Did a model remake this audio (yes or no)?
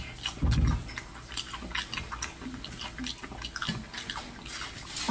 no